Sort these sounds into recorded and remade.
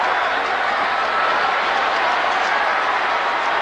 recorded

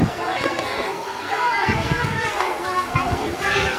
remade